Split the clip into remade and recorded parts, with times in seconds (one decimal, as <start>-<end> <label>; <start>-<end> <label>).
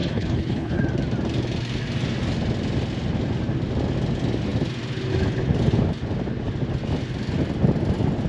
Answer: 0.0-0.8 remade; 0.8-8.3 recorded